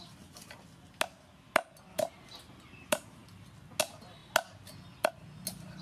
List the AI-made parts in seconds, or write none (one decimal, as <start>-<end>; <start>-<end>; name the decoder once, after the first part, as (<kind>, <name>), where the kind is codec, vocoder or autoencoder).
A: none